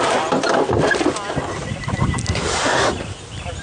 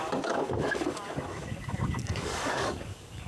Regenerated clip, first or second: second